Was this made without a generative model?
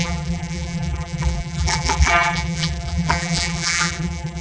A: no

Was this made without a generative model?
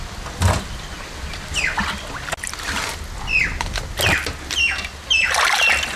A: yes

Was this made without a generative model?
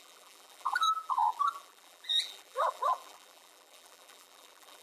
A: no